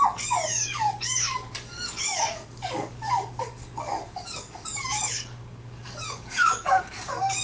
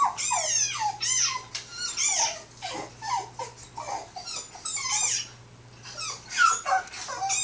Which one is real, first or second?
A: second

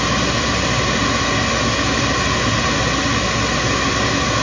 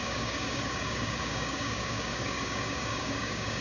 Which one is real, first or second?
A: first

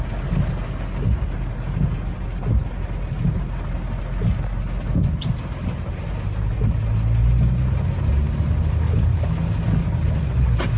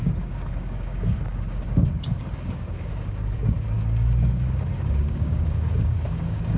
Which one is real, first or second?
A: first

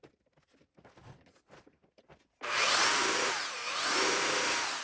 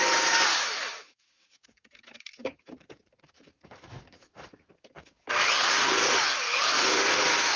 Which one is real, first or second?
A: first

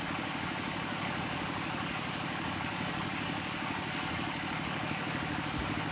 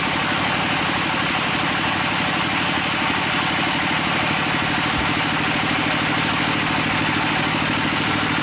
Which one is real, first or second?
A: second